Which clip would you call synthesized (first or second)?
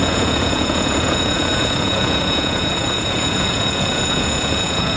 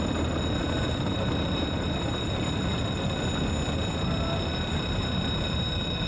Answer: first